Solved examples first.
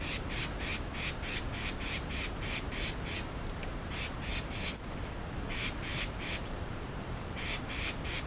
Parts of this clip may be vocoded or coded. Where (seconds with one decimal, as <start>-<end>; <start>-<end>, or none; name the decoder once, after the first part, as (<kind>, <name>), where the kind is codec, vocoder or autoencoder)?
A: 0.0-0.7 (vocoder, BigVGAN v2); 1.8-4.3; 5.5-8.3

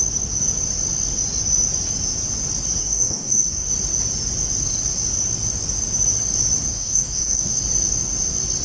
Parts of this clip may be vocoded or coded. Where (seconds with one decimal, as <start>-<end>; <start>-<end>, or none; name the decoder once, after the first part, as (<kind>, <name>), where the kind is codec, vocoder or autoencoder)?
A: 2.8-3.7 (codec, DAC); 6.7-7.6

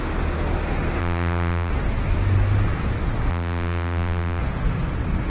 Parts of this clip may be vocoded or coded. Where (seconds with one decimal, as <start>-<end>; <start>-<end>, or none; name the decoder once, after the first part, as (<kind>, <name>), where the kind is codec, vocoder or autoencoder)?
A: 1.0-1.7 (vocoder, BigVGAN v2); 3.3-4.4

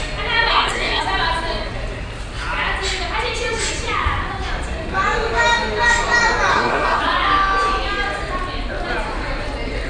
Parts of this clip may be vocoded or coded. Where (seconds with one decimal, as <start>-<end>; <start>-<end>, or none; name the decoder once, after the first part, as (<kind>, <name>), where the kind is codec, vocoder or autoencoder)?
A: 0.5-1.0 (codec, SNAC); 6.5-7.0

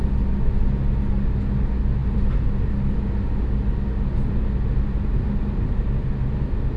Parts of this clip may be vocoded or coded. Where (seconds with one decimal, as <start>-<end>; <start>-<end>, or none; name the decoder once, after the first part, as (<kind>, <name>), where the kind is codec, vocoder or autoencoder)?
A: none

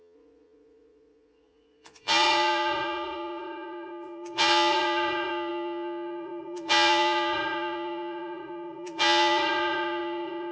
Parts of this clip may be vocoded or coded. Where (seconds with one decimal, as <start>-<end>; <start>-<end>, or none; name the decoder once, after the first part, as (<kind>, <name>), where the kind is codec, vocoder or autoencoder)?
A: 0.0-10.5 (vocoder, Vocos)

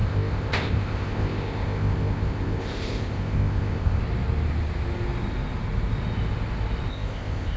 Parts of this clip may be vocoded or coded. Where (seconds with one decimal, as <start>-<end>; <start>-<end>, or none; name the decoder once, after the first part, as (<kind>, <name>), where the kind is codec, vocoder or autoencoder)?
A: 0.0-4.0 (codec, ZipCodec); 6.9-7.6